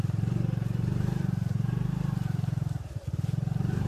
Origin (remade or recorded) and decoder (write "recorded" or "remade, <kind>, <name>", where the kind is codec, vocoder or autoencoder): remade, vocoder, BigVGAN v2